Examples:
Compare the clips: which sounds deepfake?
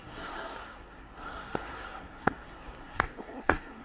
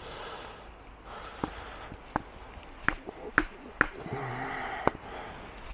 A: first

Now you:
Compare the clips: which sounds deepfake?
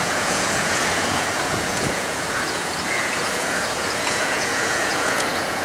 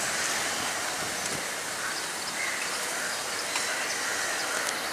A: first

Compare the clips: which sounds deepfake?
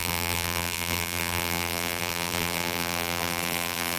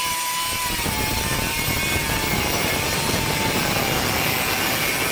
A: first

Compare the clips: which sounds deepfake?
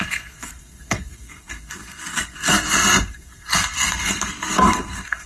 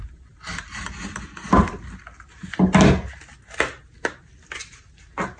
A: first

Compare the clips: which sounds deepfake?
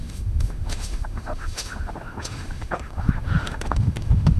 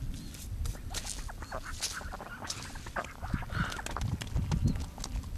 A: first